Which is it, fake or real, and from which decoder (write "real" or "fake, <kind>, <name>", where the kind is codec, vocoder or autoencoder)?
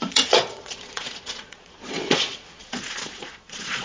fake, vocoder, Vocos